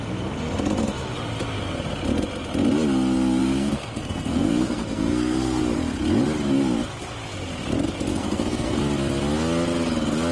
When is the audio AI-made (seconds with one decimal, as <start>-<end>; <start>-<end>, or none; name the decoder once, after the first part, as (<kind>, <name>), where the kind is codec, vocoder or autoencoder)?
3.4-5.6 (codec, SNAC); 8.1-8.8

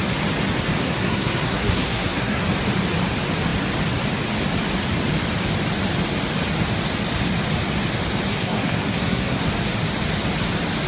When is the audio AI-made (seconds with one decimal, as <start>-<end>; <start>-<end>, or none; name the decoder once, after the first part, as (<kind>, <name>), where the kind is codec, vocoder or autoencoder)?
0.8-2.4 (codec, SNAC); 8.3-9.5